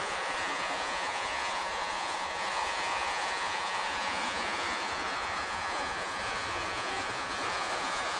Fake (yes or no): yes